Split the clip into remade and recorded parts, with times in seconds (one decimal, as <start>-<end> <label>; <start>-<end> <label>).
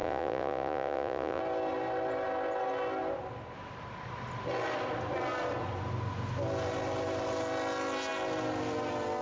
0.0-1.4 remade; 1.4-9.2 recorded